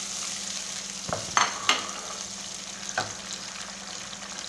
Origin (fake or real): real